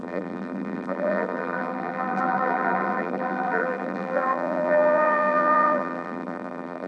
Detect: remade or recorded remade